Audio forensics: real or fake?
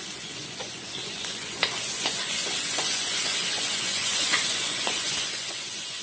fake